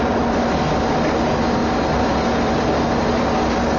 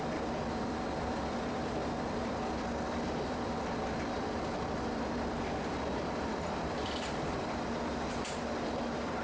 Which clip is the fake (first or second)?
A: second